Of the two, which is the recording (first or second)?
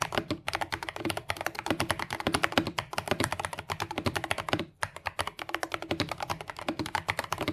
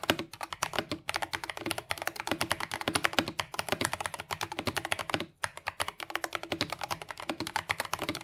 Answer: second